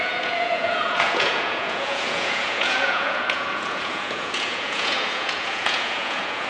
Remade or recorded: remade